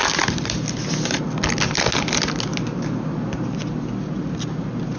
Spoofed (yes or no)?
no